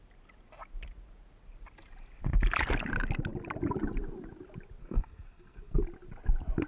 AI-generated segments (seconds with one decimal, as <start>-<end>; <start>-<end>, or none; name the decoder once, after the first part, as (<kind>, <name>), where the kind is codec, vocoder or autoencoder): 4.8-5.8 (codec, SNAC)